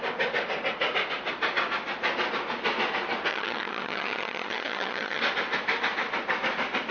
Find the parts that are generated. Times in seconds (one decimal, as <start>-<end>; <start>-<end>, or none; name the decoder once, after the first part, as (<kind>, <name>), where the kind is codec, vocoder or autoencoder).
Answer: 3.3-5.2 (vocoder, HiFi-GAN)